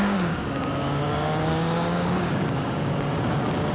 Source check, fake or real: fake